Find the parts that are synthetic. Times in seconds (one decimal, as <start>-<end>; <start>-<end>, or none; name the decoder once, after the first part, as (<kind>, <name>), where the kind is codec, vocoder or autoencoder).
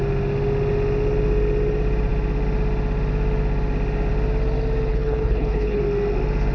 4.9-5.8 (codec, HILCodec)